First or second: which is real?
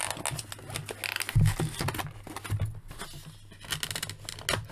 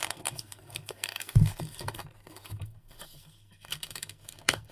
first